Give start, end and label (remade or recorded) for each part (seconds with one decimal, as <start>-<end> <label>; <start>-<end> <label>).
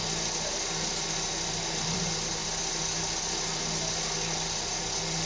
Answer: 0.0-5.3 recorded